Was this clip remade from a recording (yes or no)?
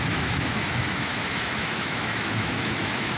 yes